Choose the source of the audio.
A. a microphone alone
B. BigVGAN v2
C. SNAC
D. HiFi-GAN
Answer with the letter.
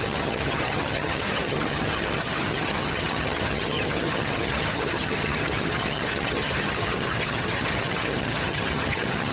D